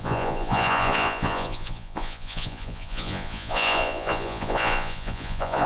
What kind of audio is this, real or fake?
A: fake